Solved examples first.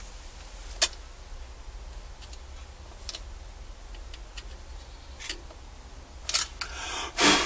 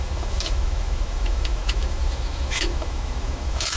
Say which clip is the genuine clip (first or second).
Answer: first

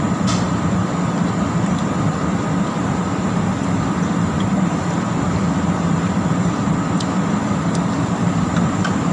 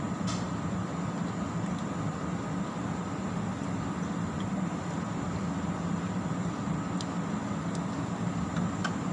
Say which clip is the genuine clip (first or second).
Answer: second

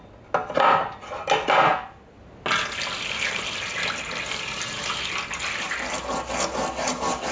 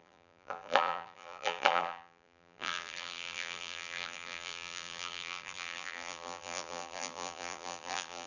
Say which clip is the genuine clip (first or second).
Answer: first